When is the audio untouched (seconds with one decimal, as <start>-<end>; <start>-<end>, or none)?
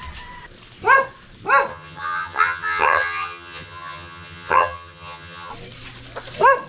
0.0-1.7; 5.5-6.7